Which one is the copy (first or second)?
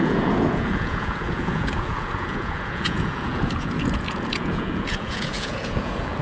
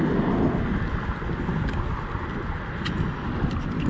first